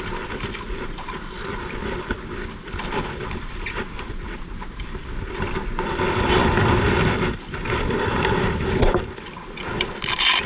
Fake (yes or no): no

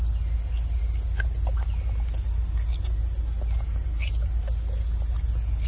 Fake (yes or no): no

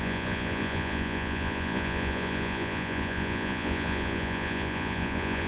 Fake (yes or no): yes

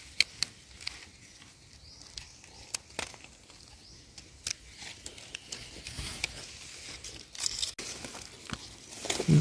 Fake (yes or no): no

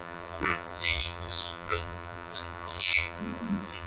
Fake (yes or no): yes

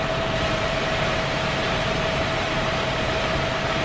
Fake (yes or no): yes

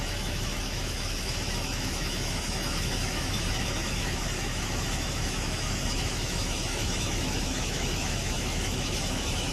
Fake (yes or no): yes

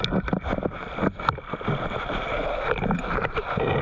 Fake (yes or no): no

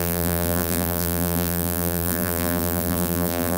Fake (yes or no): yes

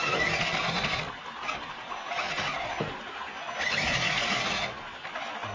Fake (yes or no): no